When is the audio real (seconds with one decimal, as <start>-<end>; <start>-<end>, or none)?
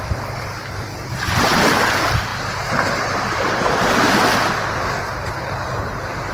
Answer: 0.0-6.3